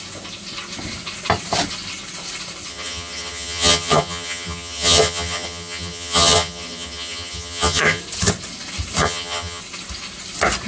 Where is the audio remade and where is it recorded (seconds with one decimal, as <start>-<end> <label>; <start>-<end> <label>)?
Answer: 0.0-2.7 recorded; 2.7-8.0 remade; 8.0-9.0 recorded; 9.0-9.6 remade; 9.6-10.7 recorded